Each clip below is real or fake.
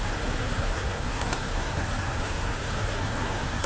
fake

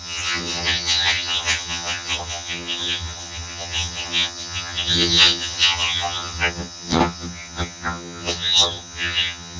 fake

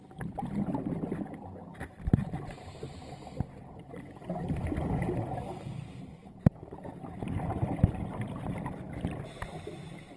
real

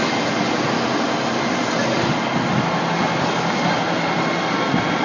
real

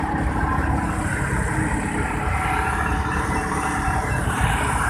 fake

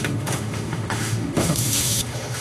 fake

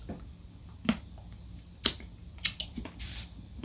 real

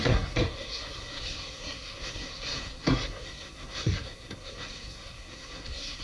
fake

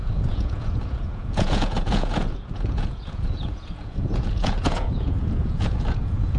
fake